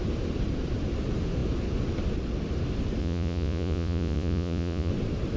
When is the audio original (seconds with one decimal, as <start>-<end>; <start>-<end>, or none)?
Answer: 0.0-3.0; 4.9-5.4